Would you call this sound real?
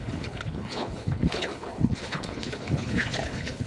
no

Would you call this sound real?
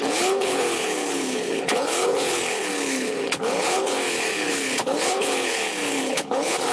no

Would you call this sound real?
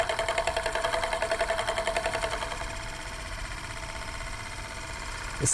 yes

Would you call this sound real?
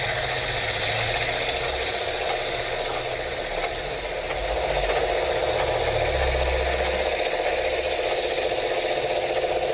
yes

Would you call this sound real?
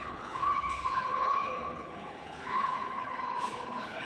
no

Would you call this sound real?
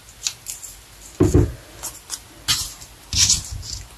yes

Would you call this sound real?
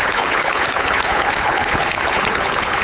no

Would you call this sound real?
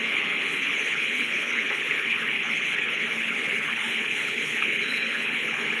no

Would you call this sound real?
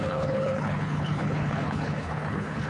no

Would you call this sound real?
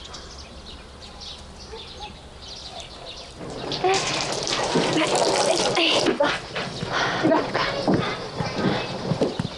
yes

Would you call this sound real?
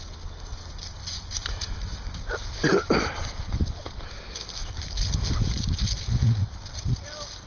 yes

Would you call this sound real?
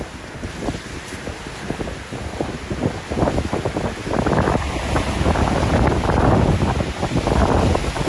yes